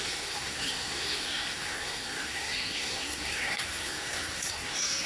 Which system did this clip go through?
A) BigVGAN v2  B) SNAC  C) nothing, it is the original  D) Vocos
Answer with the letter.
B